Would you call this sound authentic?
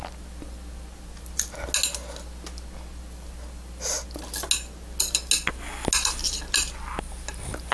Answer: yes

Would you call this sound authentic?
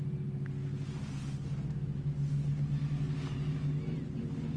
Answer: yes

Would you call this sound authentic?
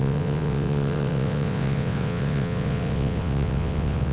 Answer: no